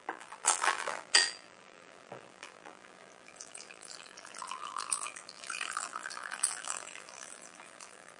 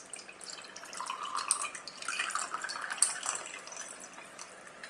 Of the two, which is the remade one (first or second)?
first